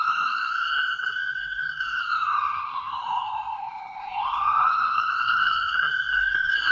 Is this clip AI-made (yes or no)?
yes